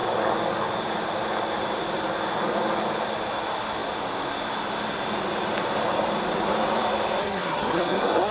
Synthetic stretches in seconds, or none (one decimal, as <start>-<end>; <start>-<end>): 7.2-8.3